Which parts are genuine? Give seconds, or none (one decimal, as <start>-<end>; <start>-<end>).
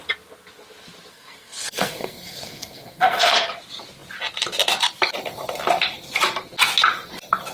0.0-1.1; 3.5-7.5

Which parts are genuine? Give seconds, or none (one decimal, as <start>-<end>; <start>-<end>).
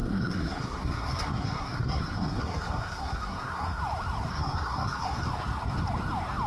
3.8-4.3; 5.2-6.5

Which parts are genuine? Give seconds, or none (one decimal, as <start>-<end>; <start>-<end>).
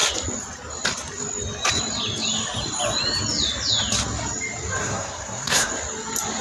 0.0-4.8; 5.7-6.4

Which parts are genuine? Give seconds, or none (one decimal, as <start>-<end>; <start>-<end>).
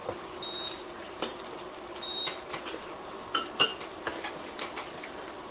0.0-5.5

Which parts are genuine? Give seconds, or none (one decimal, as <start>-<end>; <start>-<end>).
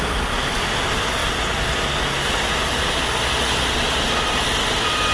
0.0-5.1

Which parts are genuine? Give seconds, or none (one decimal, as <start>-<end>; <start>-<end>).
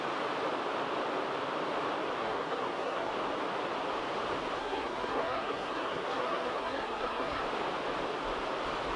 0.0-2.2; 3.1-4.6; 7.4-9.0